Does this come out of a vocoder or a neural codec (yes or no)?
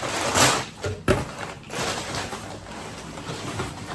no